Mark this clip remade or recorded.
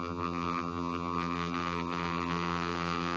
remade